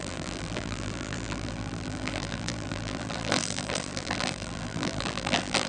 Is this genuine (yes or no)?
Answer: no